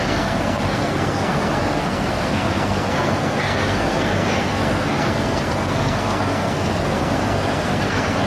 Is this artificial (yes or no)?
yes